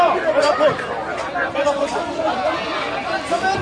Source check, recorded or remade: recorded